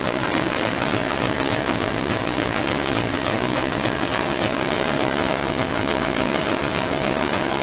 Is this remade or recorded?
remade